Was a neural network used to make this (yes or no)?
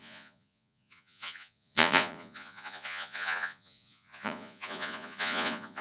yes